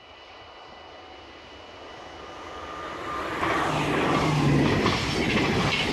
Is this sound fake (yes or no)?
no